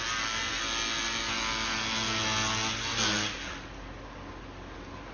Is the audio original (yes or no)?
yes